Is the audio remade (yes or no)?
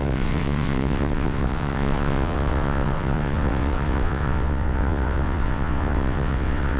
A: yes